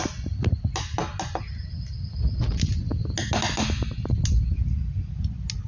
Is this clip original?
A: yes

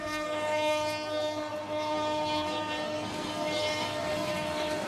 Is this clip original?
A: no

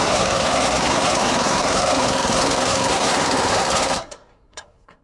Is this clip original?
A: no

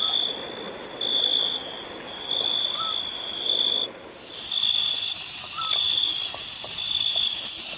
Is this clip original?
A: yes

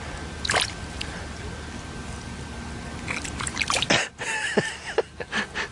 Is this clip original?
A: yes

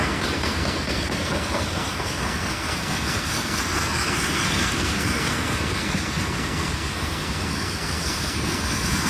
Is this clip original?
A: no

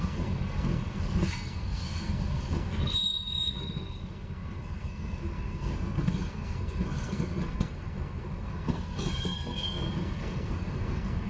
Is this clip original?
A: no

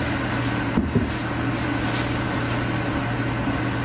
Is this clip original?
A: yes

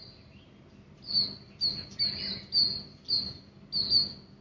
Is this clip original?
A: yes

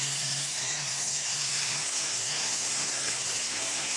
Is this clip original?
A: no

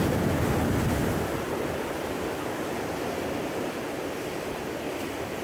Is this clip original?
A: yes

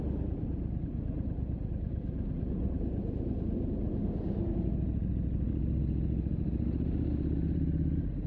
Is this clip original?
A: yes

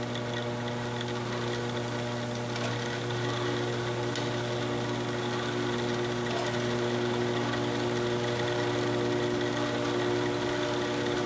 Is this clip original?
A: yes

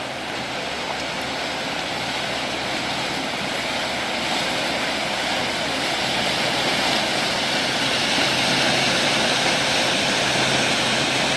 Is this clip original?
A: yes